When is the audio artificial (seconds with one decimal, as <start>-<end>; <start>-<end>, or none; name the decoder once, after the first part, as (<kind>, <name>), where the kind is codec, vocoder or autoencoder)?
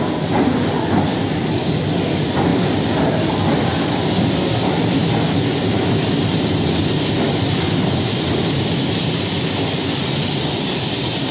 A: none